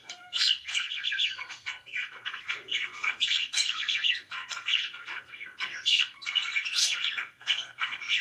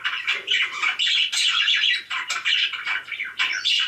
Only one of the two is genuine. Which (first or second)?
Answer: second